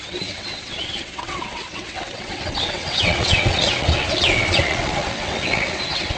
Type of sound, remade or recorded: remade